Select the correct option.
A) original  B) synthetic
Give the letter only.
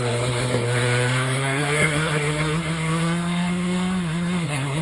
B